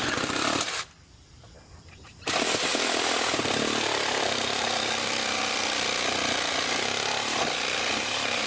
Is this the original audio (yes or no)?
no